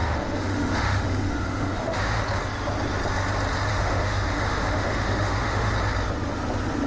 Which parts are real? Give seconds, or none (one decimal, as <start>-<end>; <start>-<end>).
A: 2.2-3.7; 5.7-6.9